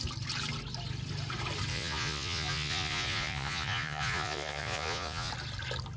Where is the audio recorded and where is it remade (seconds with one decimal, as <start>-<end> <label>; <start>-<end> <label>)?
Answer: 0.0-1.7 recorded; 1.7-5.3 remade; 5.3-6.0 recorded